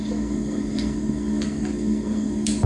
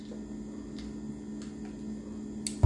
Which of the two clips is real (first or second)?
second